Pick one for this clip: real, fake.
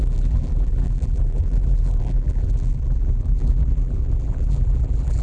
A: fake